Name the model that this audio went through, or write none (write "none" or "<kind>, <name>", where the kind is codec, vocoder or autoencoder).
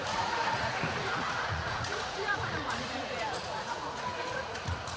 vocoder, Vocos